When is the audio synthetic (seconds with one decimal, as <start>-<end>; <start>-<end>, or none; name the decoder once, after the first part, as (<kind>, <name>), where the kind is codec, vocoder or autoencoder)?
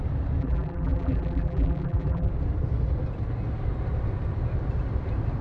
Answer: 0.4-2.3 (vocoder, BigVGAN v2)